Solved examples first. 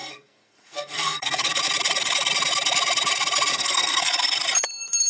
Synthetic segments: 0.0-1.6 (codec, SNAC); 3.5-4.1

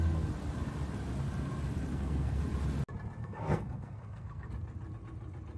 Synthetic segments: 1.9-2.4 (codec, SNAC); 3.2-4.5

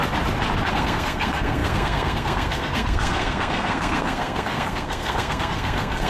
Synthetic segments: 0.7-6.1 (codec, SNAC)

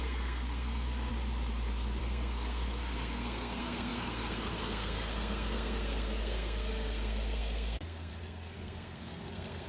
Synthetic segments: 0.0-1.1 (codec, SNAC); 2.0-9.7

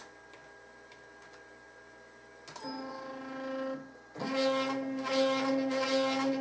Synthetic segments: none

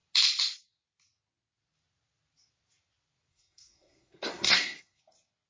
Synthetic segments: 3.3-5.0 (codec, SNAC)

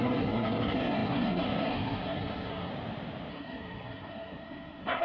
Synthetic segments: 0.0-2.7 (codec, SNAC); 3.3-5.0

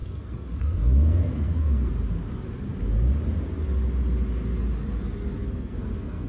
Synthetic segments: 0.0-1.9 (codec, SNAC); 5.4-6.3